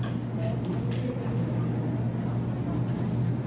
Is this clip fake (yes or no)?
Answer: no